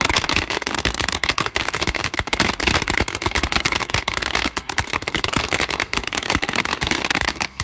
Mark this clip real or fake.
fake